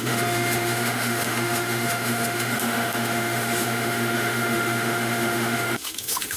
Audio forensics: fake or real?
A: fake